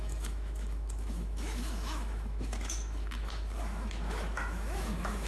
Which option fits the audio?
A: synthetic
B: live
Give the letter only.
A